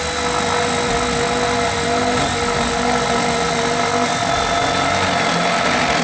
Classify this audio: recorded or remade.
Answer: recorded